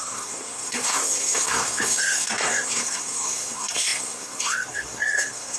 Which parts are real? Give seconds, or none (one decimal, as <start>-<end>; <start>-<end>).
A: none